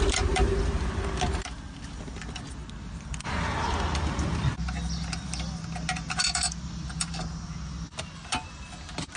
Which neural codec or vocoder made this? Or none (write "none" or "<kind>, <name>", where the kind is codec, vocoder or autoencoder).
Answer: none